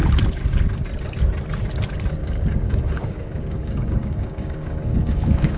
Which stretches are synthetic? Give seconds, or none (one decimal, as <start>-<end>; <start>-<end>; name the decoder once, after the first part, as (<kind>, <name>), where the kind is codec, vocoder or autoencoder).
2.2-5.6 (codec, DAC)